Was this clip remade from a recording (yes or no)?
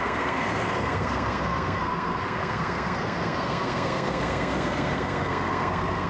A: yes